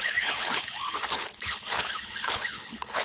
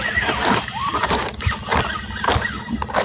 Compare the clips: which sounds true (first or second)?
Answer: second